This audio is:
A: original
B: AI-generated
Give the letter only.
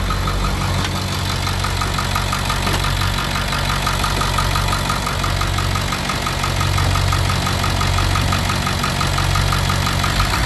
A